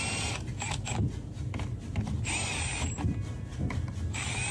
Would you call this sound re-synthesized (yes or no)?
no